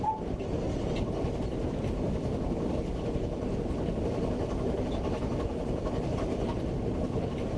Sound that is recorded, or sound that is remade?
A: recorded